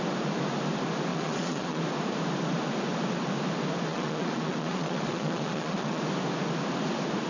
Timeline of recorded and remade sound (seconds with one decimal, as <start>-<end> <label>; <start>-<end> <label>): 0.0-1.1 recorded; 1.1-1.8 remade; 1.8-3.9 recorded; 3.9-6.0 remade; 6.0-7.3 recorded